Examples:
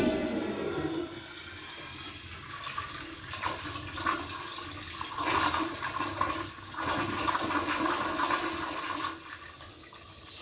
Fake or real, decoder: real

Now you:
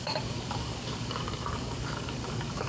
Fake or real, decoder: fake, codec, DAC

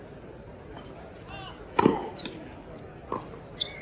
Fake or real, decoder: real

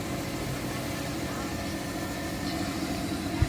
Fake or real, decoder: real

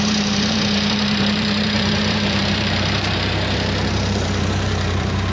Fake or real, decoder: fake, vocoder, BigVGAN v2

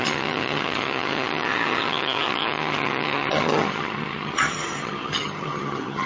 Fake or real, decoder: fake, vocoder, HiFi-GAN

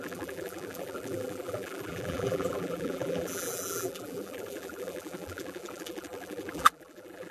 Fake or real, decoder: fake, vocoder, BigVGAN v2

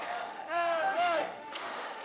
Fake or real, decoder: fake, autoencoder, DAC-VAE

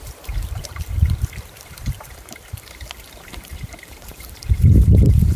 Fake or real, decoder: fake, vocoder, BigVGAN v2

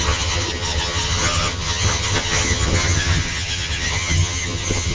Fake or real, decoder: fake, vocoder, HiFi-GAN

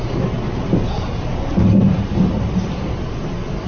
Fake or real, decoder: real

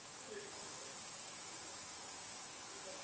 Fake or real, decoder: fake, autoencoder, DAC-VAE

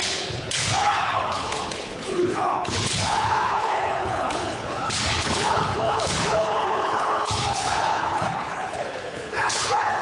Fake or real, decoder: fake, codec, HILCodec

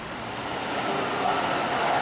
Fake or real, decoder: real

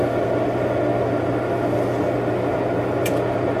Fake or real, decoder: real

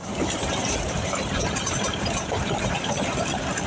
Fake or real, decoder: fake, vocoder, BigVGAN v2